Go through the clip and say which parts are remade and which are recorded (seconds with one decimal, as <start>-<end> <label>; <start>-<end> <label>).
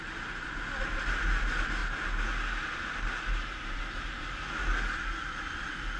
0.0-6.0 recorded